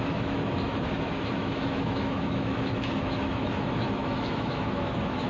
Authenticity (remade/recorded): remade